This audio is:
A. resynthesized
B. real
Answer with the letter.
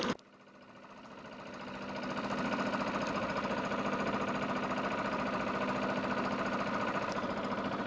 B